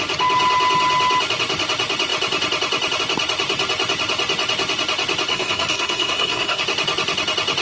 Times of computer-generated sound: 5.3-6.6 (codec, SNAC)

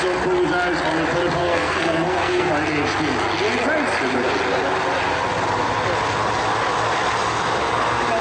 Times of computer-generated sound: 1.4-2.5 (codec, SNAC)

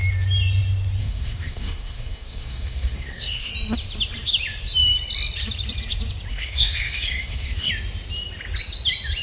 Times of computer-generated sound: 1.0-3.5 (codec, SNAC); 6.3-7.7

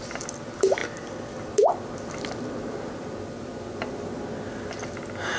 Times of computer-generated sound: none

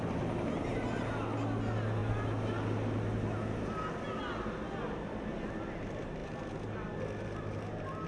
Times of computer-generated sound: none

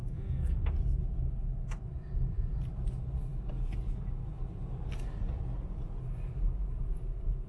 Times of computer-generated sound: 0.0-0.6 (codec, SNAC)

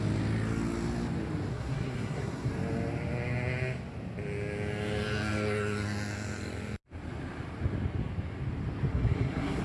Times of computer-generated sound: 1.5-2.5 (codec, SNAC); 8.9-9.6